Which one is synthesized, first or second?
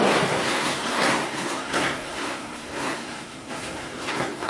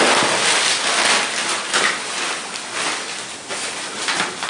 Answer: first